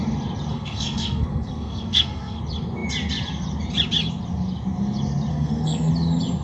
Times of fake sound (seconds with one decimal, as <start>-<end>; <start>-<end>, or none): 0.5-2.4; 5.3-5.9